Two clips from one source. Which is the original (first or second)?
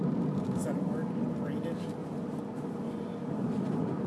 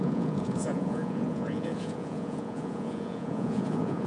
first